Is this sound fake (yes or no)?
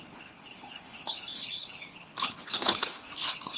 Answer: yes